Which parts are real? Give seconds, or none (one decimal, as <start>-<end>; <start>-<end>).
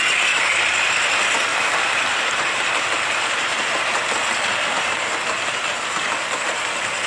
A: 0.0-7.1